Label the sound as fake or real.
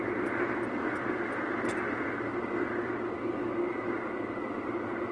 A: real